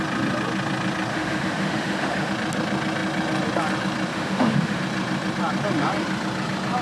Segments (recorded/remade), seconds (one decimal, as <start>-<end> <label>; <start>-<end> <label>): 0.0-1.1 recorded; 1.1-2.3 remade; 2.3-4.1 recorded; 4.1-4.8 remade; 4.8-6.8 recorded